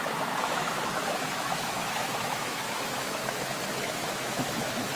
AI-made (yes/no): yes